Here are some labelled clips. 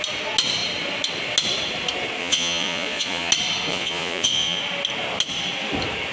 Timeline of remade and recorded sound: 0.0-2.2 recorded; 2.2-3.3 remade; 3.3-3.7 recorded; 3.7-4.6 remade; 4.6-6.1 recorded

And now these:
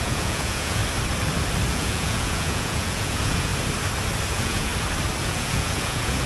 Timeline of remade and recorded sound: 0.0-0.8 remade; 0.8-1.7 recorded; 1.7-3.5 remade; 3.5-4.3 recorded; 4.3-4.7 remade; 4.7-5.2 recorded; 5.2-6.3 remade

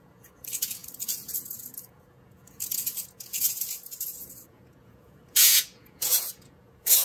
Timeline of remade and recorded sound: 0.0-7.0 remade

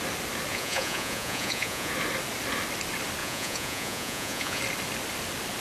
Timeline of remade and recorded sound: 0.0-0.5 recorded; 0.5-1.9 remade; 1.9-3.2 recorded; 3.2-4.6 remade; 4.6-5.6 recorded

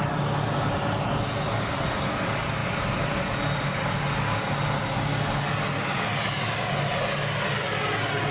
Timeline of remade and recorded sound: 0.0-8.3 recorded

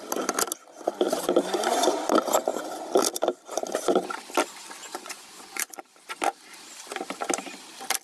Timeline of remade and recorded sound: 0.0-4.8 recorded; 4.8-5.8 remade; 5.8-8.0 recorded

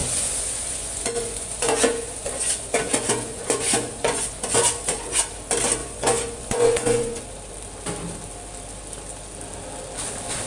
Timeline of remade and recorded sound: 0.0-5.2 remade; 5.2-5.8 recorded; 5.8-7.2 remade; 7.2-10.5 recorded

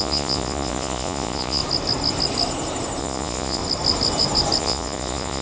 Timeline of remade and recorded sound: 0.0-1.6 remade; 1.6-3.0 recorded; 3.0-3.6 remade; 3.6-4.6 recorded; 4.6-5.4 remade